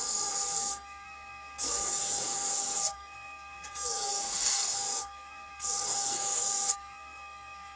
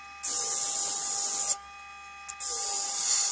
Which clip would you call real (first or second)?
second